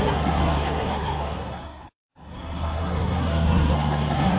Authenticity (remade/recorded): remade